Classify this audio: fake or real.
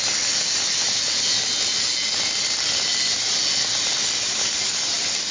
real